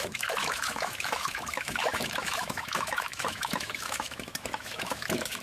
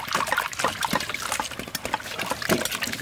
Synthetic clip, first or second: first